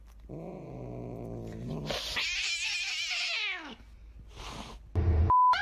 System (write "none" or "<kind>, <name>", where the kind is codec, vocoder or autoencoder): none